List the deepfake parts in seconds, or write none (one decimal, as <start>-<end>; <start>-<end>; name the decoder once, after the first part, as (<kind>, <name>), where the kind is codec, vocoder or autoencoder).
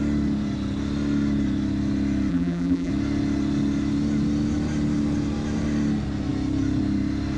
2.3-2.9 (vocoder, BigVGAN v2)